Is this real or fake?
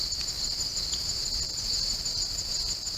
real